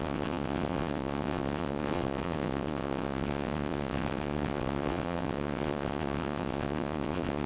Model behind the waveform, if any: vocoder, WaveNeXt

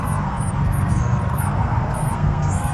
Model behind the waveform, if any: codec, SNAC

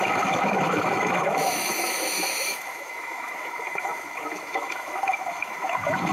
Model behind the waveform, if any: autoencoder, DAC-VAE